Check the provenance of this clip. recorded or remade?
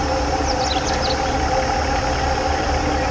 recorded